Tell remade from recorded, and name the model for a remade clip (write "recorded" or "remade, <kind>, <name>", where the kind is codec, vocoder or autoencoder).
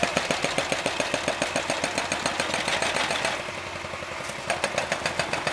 recorded